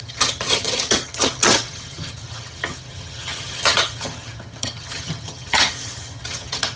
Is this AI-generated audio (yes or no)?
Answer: yes